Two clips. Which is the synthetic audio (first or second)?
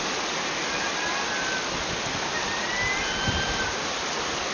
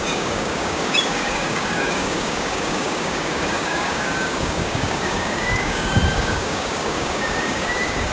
second